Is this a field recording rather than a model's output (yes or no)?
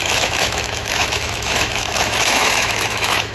no